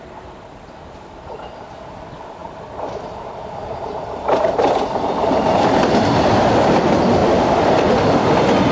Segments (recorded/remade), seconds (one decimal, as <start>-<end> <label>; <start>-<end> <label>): 0.0-8.7 recorded